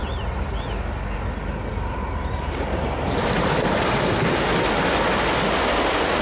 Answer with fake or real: real